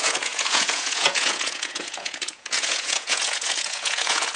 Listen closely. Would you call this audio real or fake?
fake